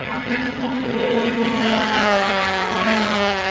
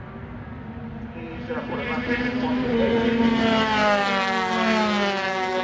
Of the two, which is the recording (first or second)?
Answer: second